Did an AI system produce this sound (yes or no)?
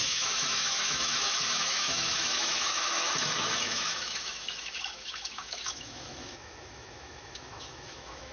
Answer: yes